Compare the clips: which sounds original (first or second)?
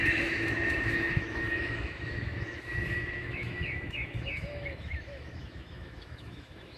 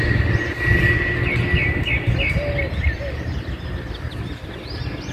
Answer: second